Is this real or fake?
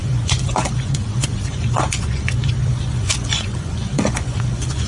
fake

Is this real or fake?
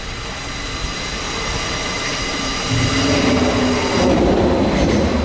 real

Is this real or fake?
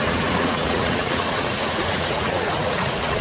fake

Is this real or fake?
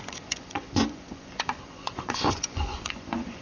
fake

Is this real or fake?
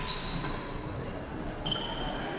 real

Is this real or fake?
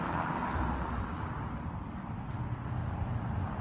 real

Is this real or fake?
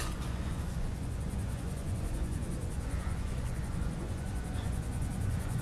fake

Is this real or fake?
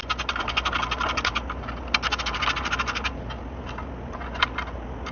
real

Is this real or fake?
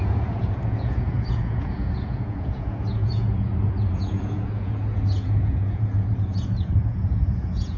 fake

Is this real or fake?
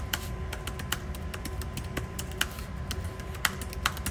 real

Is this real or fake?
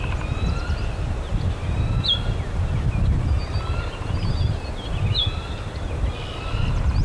real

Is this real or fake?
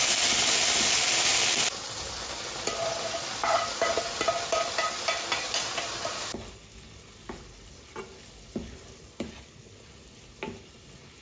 real